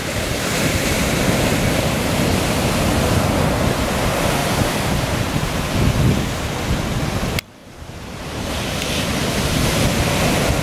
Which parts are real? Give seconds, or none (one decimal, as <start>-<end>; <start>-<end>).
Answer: 0.9-4.4; 5.2-7.6; 8.8-10.6